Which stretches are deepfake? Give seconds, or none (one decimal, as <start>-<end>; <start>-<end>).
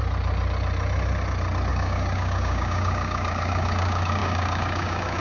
1.7-5.2